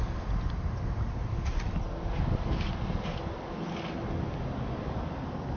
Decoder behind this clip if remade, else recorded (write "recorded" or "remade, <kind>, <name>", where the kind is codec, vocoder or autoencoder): recorded